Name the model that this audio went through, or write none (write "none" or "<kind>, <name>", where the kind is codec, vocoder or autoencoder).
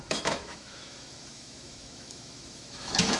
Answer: autoencoder, DAC-VAE